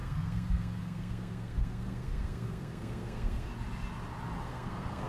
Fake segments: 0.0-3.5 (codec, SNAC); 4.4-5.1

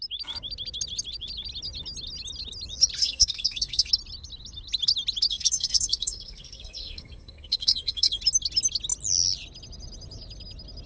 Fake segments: 3.0-3.9 (codec, SNAC); 5.3-8.2

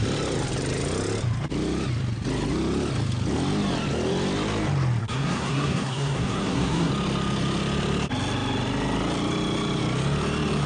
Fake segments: 5.0-6.9 (codec, SNAC)

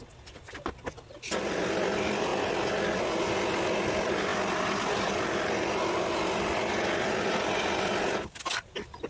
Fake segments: none

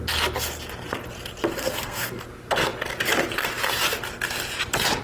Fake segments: 1.6-2.2 (codec, SNAC)

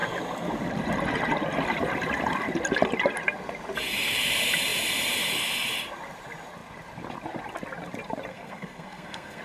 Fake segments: 8.3-9.4 (codec, SNAC)

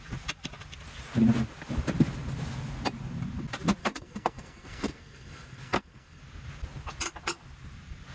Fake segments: 3.8-6.2 (codec, SNAC)